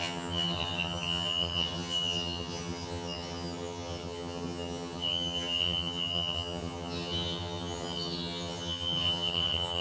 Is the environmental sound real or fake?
fake